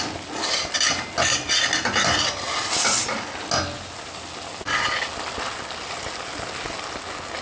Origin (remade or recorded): recorded